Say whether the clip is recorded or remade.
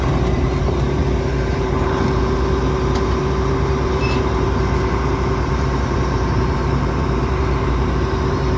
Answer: remade